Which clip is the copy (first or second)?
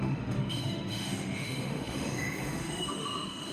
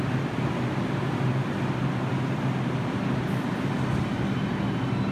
first